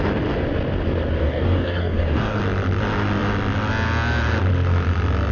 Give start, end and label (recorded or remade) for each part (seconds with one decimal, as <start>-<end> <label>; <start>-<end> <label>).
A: 0.0-1.2 recorded; 1.2-2.4 remade; 2.4-5.3 recorded